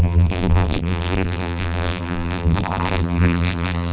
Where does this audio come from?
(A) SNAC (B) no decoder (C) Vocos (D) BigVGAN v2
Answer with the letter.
D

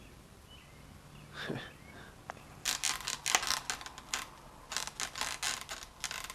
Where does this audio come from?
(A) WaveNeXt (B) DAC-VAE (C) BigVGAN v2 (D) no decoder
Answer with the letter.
D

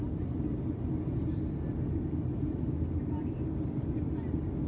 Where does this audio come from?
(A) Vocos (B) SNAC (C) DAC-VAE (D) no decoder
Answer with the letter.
D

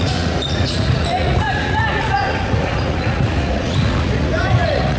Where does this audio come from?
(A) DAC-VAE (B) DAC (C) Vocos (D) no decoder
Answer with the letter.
C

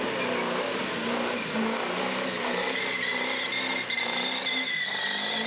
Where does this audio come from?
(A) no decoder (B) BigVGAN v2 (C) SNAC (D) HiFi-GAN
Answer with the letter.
A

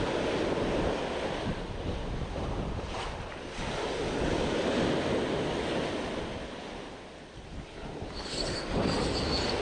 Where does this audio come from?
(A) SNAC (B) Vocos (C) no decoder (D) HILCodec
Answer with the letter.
C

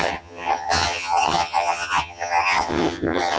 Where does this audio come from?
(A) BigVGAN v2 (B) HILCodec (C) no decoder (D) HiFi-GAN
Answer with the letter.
D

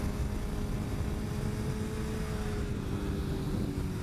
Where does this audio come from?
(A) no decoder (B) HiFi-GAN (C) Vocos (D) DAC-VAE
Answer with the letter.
A